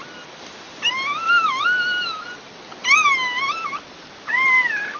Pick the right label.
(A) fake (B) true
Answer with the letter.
B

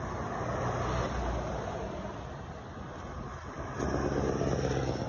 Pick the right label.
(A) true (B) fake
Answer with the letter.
A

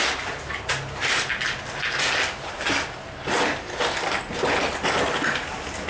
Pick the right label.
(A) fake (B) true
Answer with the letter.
B